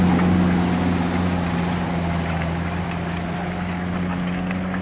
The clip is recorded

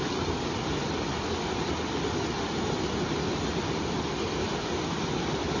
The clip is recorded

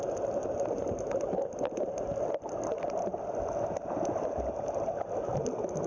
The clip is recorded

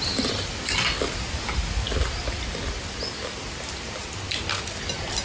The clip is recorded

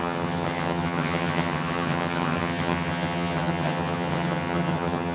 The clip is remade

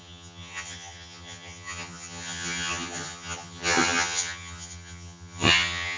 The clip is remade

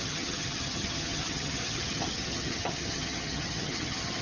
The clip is remade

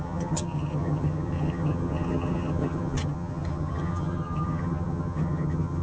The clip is remade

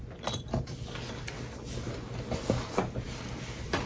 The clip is recorded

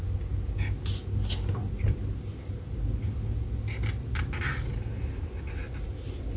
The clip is recorded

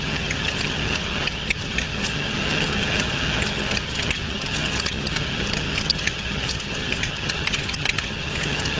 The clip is remade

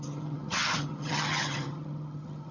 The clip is remade